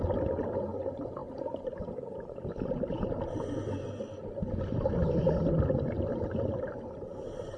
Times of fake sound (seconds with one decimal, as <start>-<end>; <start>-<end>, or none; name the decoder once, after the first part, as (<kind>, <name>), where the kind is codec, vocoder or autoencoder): none